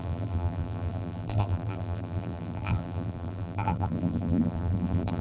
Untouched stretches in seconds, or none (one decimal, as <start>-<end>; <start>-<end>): none